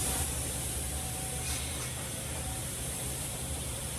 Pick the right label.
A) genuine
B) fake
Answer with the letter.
B